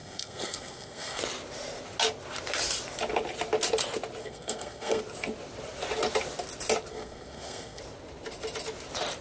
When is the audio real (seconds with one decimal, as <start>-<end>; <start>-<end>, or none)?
1.2-4.2; 5.0-6.9; 7.8-9.2